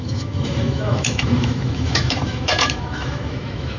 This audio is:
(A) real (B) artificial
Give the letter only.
B